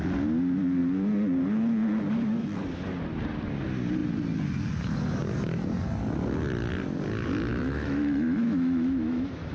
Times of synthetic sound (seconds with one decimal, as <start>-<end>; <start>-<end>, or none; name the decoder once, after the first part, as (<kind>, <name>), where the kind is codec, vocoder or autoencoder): 7.5-9.5 (autoencoder, DAC-VAE)